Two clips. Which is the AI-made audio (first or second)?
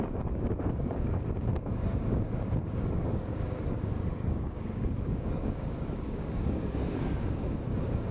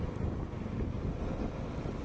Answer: first